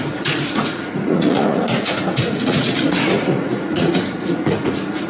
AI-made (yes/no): yes